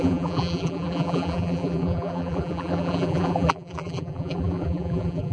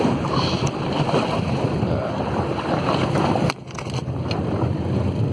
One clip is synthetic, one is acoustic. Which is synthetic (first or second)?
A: first